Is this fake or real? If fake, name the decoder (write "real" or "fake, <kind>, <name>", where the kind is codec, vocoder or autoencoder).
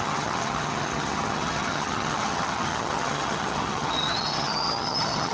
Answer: fake, vocoder, HiFi-GAN